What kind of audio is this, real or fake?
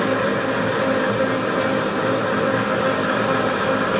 real